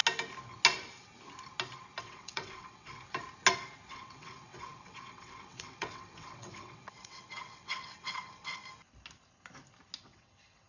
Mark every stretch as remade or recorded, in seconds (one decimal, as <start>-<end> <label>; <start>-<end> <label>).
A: 0.0-2.0 recorded; 2.0-2.9 remade; 2.9-3.9 recorded; 3.9-8.6 remade; 8.6-10.0 recorded; 10.0-10.7 remade